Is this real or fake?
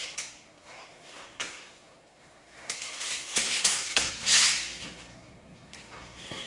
fake